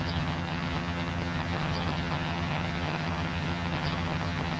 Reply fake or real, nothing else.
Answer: fake